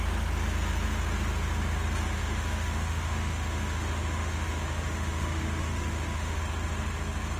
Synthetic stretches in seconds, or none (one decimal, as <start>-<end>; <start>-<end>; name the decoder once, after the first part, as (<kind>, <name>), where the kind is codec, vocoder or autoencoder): 2.2-6.4 (autoencoder, DAC-VAE)